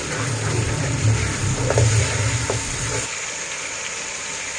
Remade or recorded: remade